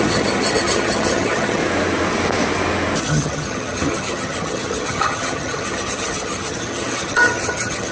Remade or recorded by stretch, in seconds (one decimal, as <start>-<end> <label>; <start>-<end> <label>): 0.0-1.6 remade; 1.6-3.0 recorded; 3.0-7.9 remade